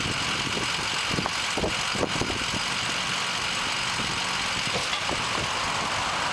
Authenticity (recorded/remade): recorded